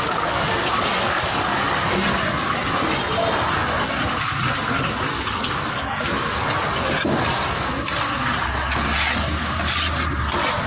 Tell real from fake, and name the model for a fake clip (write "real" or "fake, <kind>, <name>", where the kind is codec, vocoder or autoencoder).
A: real